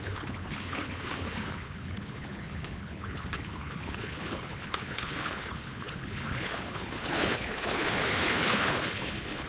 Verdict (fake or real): fake